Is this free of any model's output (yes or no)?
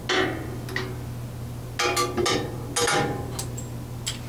yes